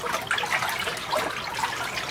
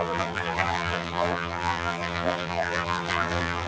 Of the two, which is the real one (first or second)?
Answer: first